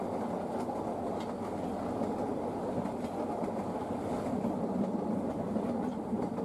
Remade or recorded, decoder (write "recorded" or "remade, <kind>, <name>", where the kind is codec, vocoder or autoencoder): recorded